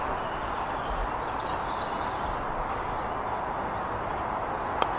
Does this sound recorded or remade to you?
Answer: recorded